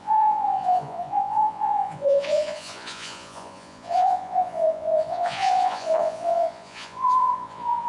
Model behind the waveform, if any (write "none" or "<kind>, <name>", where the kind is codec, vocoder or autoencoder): vocoder, Vocos